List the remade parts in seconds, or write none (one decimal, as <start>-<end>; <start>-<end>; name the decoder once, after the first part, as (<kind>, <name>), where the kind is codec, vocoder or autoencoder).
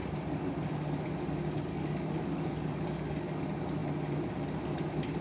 1.7-3.4 (codec, DAC)